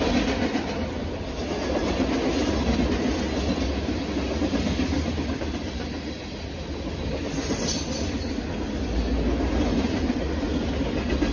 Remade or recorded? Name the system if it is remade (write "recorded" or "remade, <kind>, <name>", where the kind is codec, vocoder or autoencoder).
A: recorded